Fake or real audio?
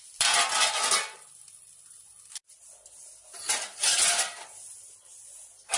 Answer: real